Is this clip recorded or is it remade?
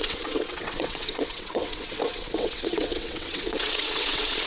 remade